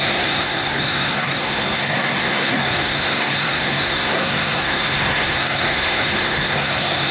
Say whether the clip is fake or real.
fake